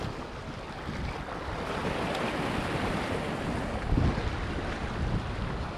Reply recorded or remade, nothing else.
recorded